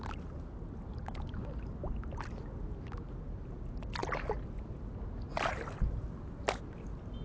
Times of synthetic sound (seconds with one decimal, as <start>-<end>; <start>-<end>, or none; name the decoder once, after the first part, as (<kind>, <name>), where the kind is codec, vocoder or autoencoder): none